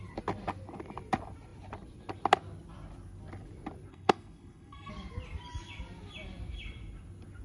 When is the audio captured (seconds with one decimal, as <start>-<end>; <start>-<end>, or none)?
0.0-3.9; 4.9-7.4